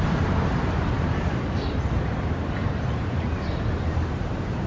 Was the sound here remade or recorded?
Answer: remade